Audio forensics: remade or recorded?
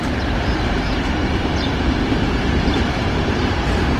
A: remade